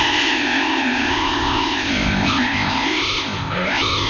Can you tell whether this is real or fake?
fake